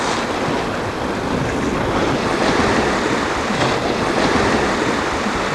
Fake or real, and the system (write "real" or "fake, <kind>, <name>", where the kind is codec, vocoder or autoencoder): real